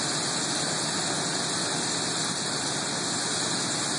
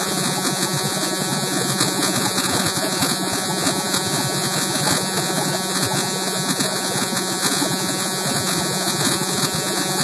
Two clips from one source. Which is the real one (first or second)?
first